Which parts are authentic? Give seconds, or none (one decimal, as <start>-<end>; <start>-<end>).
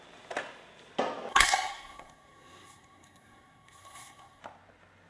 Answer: 0.0-1.3; 4.4-5.1